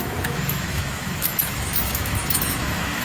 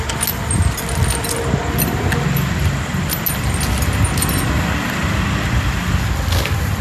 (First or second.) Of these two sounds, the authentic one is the second